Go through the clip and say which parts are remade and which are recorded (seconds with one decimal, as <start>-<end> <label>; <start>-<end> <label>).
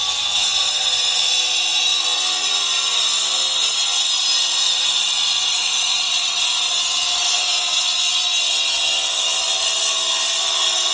0.0-5.6 recorded; 5.6-6.4 remade; 6.4-10.9 recorded